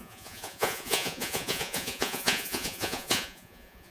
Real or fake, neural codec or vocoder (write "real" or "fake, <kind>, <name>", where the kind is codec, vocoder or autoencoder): fake, vocoder, Vocos